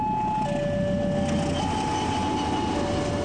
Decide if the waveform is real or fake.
real